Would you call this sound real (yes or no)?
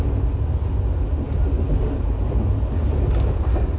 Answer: yes